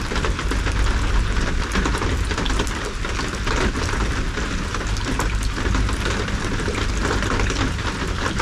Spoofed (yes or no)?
no